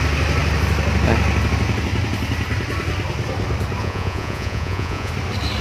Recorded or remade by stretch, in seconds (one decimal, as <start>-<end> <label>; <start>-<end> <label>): 0.0-3.8 recorded; 3.8-5.1 remade; 5.1-5.6 recorded